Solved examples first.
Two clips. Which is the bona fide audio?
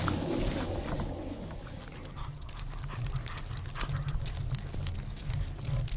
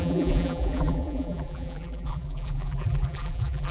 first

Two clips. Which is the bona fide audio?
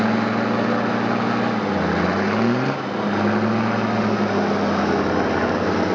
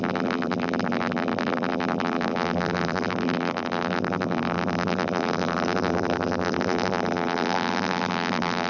first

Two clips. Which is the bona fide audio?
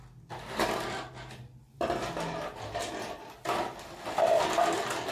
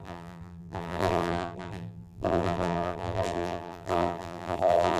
first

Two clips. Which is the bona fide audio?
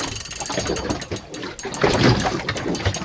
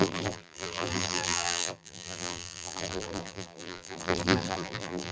first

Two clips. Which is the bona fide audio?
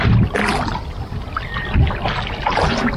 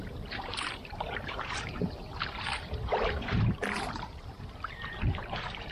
first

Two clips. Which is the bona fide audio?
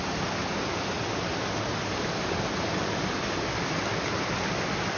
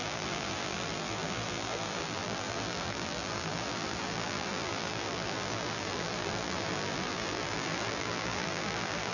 first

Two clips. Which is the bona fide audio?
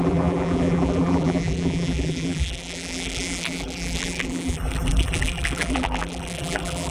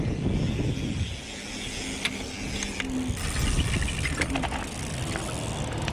second